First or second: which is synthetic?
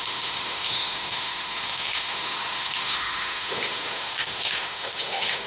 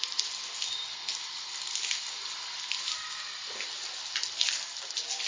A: first